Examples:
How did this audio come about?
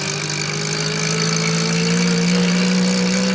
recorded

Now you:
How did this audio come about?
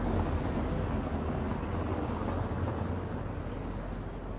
recorded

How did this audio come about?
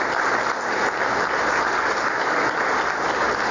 recorded